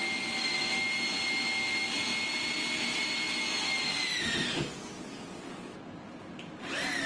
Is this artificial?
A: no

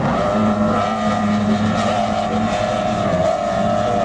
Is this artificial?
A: no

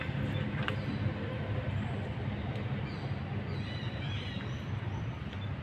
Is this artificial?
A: no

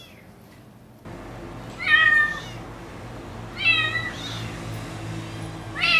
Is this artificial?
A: no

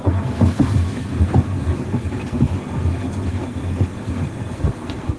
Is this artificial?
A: yes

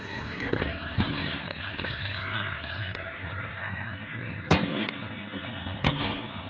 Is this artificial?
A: yes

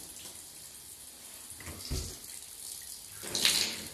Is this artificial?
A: no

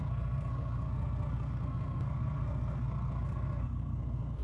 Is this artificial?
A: yes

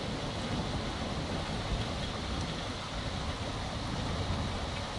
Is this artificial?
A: no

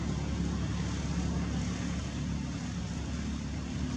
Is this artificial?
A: no